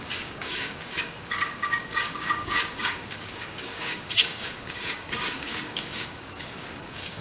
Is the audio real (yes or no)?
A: no